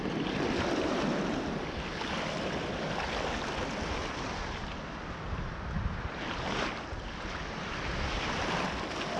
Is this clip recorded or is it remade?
recorded